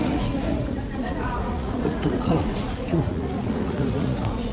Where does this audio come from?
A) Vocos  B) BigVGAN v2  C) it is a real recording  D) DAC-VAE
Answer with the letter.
A